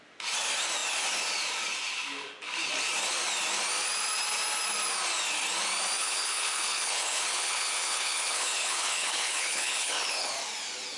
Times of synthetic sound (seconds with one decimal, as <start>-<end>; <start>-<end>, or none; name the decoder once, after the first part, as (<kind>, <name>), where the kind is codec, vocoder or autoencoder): 6.0-10.3 (codec, HILCodec)